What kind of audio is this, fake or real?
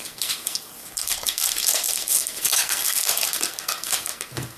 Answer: fake